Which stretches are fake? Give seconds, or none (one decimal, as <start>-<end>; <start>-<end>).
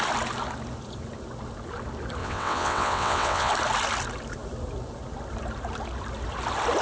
2.2-3.5